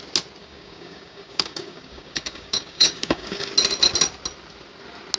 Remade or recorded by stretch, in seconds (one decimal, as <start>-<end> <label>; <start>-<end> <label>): 0.0-0.4 recorded; 0.4-3.5 remade; 3.5-5.2 recorded